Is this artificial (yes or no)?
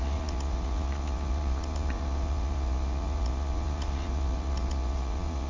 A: yes